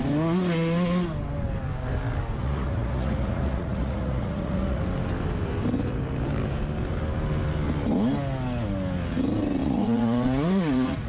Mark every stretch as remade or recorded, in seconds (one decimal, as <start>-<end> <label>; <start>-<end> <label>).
0.0-2.4 recorded; 2.4-4.8 remade; 4.8-9.6 recorded; 9.6-11.1 remade